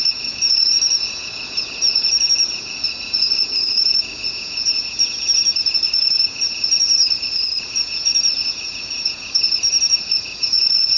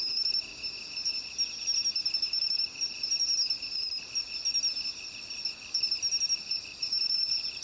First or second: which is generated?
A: first